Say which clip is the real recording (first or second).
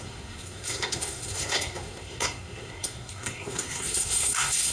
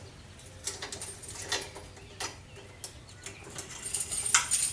second